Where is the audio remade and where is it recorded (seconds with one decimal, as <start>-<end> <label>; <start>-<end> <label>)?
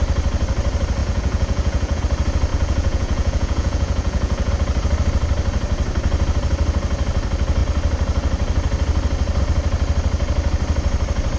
0.0-1.0 recorded; 1.0-2.0 remade; 2.0-2.5 recorded; 2.5-4.5 remade; 4.5-11.4 recorded